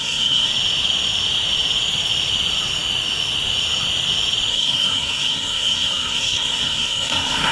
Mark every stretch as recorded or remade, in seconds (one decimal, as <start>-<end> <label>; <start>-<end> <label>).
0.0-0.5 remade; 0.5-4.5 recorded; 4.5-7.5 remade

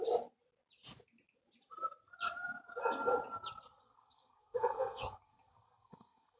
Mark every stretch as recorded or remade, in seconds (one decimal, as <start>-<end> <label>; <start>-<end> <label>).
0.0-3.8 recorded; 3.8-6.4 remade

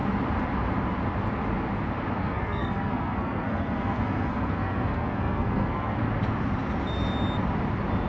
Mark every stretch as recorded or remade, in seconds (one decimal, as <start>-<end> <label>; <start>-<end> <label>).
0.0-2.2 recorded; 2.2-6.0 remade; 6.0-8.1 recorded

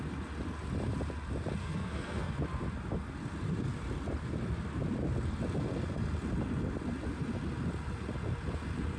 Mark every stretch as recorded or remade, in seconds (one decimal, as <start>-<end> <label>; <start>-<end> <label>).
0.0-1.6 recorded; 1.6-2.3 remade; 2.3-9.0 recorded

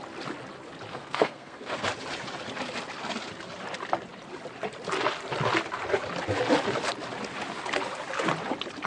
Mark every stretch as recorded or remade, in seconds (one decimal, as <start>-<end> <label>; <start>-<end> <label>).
0.0-0.9 recorded; 0.9-1.8 remade; 1.8-8.9 recorded

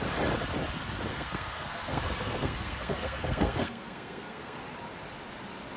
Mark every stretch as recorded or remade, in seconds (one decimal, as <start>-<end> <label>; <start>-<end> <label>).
0.0-1.1 recorded; 1.1-4.6 remade; 4.6-5.8 recorded

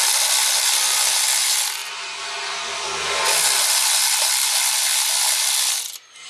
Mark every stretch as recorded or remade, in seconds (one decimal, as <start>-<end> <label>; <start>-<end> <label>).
0.0-6.3 recorded